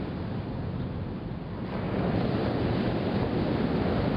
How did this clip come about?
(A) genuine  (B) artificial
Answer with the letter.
A